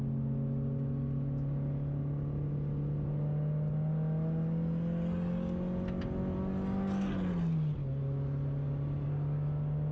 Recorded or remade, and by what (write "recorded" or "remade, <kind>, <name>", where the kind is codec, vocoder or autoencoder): recorded